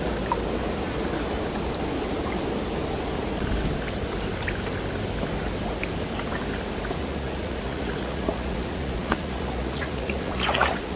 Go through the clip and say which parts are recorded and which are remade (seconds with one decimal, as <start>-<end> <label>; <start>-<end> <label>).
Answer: 0.0-7.0 recorded; 7.0-11.0 remade